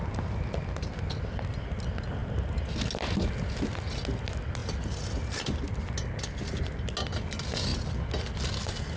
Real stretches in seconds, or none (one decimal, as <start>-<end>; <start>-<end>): 0.0-9.0